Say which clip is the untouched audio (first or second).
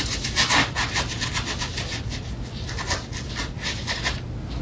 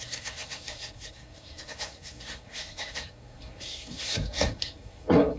first